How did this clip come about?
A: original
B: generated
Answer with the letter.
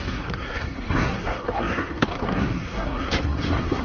B